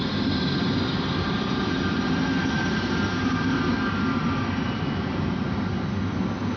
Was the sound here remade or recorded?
recorded